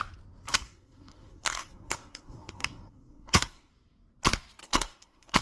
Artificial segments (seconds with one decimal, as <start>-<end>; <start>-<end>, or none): 0.5-3.7; 4.6-5.4